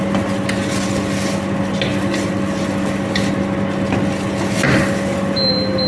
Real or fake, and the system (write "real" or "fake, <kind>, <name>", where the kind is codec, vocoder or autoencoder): real